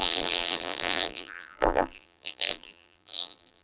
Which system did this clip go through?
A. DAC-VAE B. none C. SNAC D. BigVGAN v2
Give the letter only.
D